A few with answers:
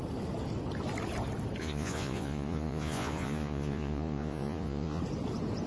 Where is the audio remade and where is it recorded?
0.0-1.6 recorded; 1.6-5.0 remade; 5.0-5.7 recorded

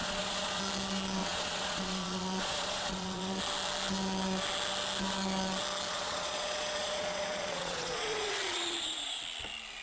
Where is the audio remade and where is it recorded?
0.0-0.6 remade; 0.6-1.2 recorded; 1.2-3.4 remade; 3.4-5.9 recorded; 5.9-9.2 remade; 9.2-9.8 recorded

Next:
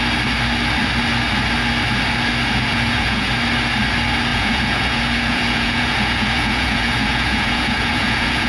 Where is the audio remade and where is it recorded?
0.0-2.7 recorded; 2.7-3.3 remade; 3.3-4.3 recorded; 4.3-8.5 remade

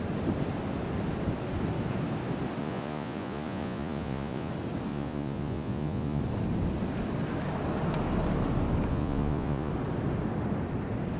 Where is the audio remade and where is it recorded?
0.0-2.6 recorded; 2.6-4.5 remade; 4.5-4.9 recorded; 4.9-6.2 remade; 6.2-8.9 recorded; 8.9-9.7 remade; 9.7-11.2 recorded

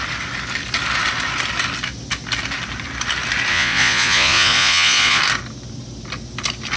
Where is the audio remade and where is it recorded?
0.0-3.5 recorded; 3.5-5.2 remade; 5.2-6.8 recorded

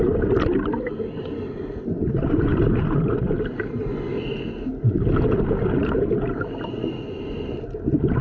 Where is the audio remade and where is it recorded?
0.0-8.2 recorded